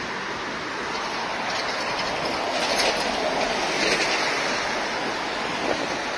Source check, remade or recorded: recorded